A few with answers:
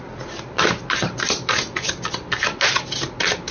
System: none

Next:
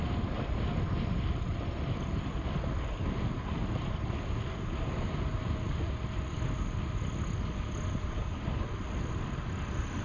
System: none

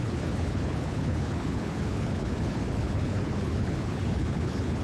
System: codec, HILCodec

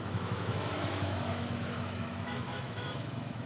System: autoencoder, DAC-VAE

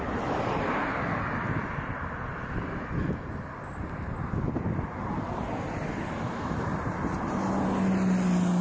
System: none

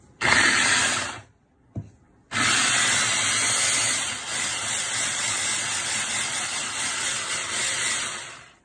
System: none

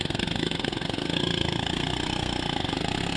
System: codec, SNAC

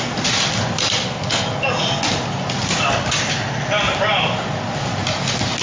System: none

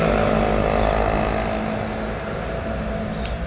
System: none